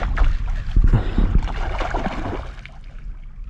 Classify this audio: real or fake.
real